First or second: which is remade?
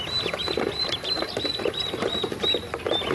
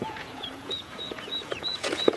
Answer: second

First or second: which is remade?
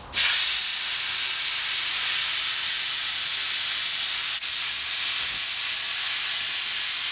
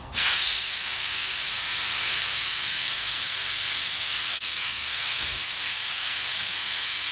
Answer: second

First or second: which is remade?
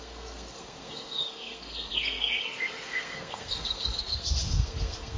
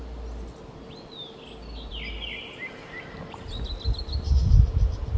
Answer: first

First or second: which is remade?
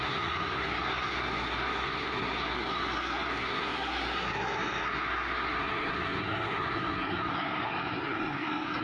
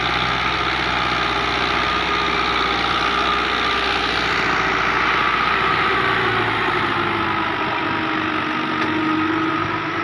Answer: first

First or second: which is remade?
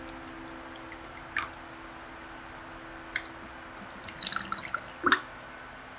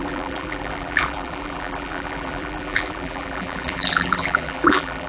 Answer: second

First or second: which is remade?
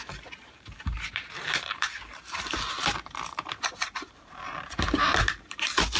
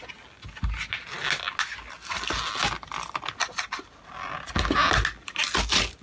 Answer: first